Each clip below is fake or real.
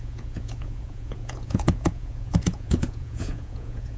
fake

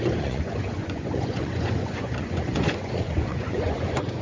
fake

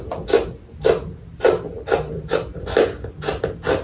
real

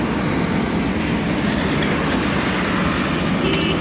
real